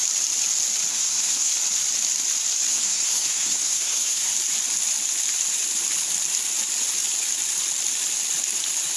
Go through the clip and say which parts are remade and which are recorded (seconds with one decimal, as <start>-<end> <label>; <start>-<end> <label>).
0.0-0.9 recorded; 0.9-1.5 remade; 1.5-2.7 recorded; 2.7-4.3 remade; 4.3-9.0 recorded